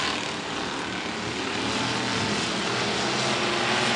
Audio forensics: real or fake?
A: real